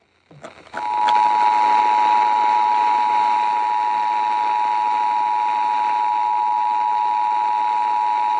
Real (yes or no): yes